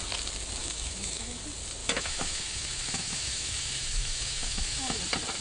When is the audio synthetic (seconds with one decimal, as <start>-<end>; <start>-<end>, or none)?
0.6-1.4; 1.8-5.0